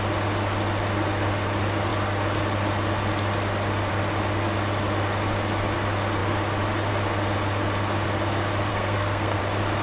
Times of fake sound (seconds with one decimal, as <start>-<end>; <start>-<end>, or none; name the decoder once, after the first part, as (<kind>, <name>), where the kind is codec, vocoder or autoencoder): 8.7-9.4 (codec, SNAC)